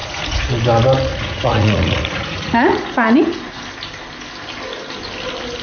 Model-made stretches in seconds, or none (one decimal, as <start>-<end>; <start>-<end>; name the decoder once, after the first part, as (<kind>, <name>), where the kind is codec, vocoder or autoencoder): 0.0-0.5 (vocoder, Vocos); 1.1-3.6